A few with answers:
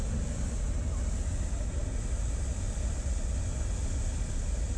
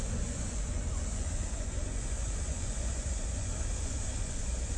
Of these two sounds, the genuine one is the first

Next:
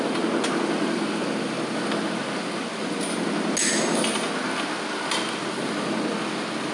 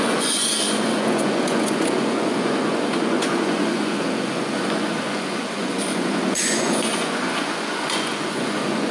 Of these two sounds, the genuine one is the first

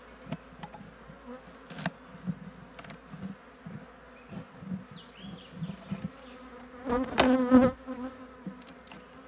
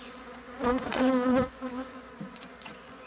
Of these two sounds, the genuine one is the first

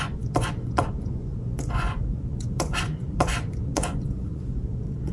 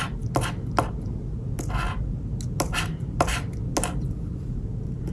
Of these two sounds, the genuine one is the second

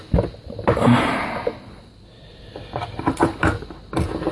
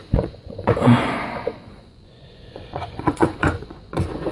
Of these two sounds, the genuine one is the first